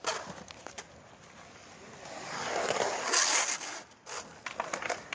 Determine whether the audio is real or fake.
real